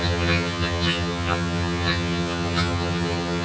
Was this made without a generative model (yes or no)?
no